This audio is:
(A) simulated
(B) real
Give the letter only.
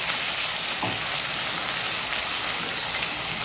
B